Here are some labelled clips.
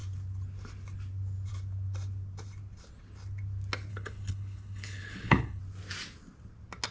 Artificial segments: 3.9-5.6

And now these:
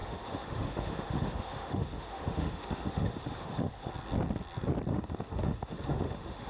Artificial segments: 0.0-3.9; 4.9-6.5